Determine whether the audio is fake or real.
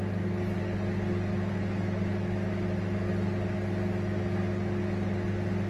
real